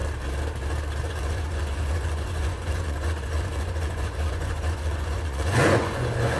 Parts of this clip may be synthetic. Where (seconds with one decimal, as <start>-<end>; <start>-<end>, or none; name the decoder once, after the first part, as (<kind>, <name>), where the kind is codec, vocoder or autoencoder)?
1.1-6.4 (vocoder, Vocos)